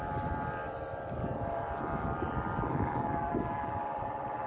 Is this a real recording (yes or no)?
no